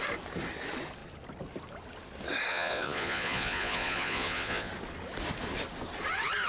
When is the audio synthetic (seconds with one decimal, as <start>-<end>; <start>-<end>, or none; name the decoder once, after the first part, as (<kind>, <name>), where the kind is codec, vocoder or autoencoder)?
2.5-4.7 (vocoder, Vocos)